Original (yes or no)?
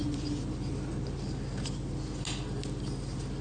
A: yes